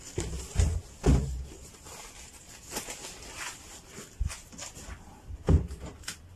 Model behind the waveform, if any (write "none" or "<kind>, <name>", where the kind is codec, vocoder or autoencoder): none